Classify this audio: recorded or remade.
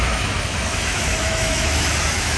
remade